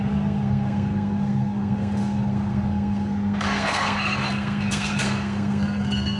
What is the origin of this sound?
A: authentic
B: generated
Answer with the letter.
B